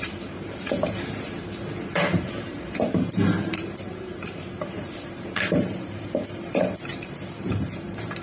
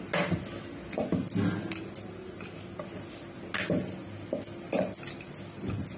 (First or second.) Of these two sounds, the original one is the second